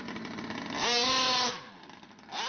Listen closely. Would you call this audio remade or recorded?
recorded